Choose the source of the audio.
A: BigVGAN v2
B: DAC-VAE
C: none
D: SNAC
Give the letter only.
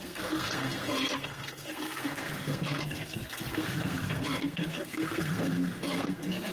D